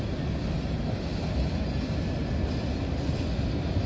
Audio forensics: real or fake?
real